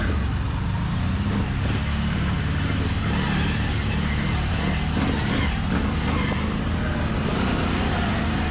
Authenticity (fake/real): real